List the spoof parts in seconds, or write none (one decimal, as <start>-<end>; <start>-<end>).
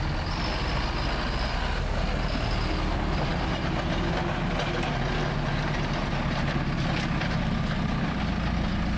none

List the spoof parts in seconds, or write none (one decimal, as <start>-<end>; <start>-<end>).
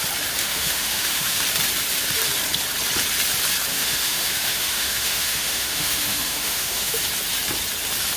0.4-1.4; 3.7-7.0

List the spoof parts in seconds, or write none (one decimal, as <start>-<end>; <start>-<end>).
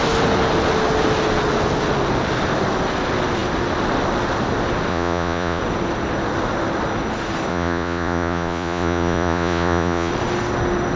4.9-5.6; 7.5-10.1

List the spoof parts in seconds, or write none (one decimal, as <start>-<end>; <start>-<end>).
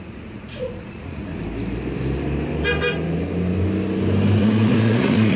0.0-1.3; 4.4-5.4